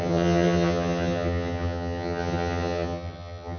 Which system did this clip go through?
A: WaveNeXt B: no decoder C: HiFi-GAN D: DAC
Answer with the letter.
C